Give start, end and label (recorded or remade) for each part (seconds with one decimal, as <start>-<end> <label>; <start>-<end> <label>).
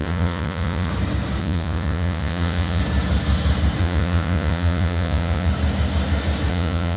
0.0-0.9 remade; 0.9-1.4 recorded; 1.4-2.8 remade; 2.8-3.8 recorded; 3.8-5.5 remade; 5.5-6.5 recorded; 6.5-7.0 remade